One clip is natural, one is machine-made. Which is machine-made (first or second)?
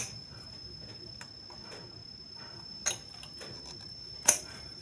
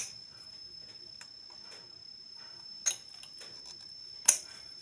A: first